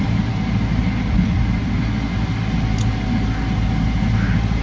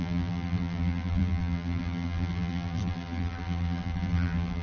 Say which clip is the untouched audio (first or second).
first